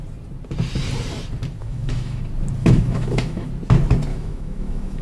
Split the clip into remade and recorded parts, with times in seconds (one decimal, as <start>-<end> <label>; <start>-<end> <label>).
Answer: 0.0-1.6 recorded; 1.6-2.2 remade; 2.2-2.6 recorded; 2.6-3.5 remade; 3.5-4.1 recorded; 4.1-5.0 remade